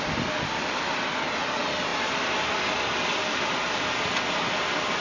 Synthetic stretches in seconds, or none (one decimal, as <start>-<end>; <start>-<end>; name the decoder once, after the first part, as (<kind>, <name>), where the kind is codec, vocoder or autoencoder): none